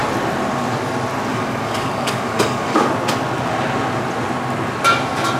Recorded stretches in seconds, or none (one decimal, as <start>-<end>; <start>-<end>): 0.0-1.3; 2.9-5.4